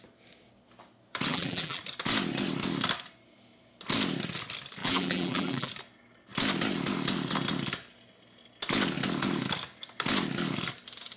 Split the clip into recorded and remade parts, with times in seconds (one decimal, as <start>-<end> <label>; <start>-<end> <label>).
0.0-1.3 recorded; 1.3-1.8 remade; 1.8-4.8 recorded; 4.8-5.7 remade; 5.7-11.2 recorded